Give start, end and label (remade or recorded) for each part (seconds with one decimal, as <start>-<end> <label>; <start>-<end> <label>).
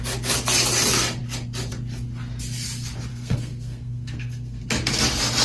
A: 0.0-3.1 recorded; 3.1-4.6 remade; 4.6-5.4 recorded